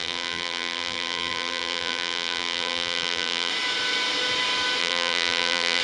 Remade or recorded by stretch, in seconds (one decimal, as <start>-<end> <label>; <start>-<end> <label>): 0.0-3.5 remade; 3.5-4.8 recorded; 4.8-5.8 remade